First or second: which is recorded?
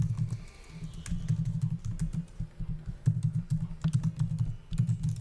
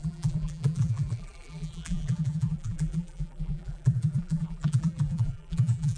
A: first